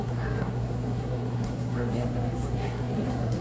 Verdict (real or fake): fake